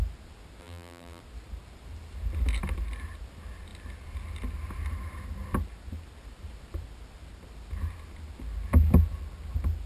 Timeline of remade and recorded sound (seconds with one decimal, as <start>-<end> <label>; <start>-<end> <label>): 0.0-0.6 recorded; 0.6-1.2 remade; 1.2-9.9 recorded